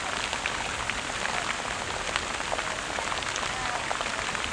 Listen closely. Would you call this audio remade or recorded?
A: recorded